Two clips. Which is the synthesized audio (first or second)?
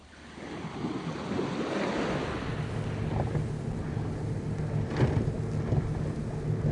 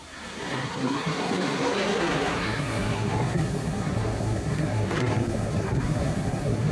second